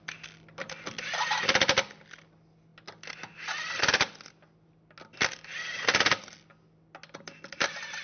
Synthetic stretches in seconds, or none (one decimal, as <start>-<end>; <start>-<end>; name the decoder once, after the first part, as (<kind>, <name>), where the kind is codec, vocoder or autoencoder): none